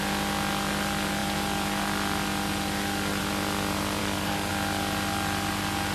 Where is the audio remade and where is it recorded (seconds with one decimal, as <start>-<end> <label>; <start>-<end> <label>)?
0.0-4.0 recorded; 4.0-4.5 remade; 4.5-5.9 recorded